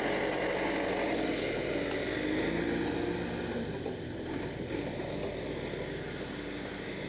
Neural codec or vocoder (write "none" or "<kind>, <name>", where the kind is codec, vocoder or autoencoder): none